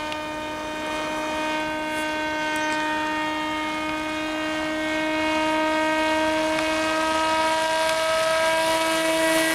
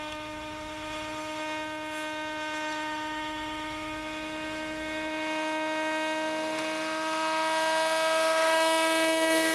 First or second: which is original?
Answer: first